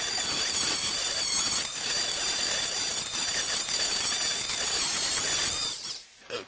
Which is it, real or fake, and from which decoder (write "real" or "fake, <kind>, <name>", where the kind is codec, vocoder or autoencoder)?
fake, vocoder, BigVGAN v2